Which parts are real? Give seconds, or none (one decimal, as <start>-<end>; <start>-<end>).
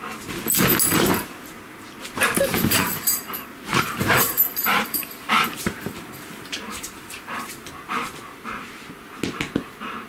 0.0-2.5; 7.7-10.1